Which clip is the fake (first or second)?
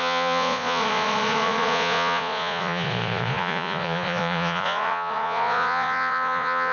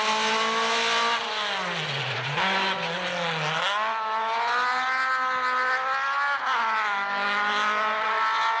first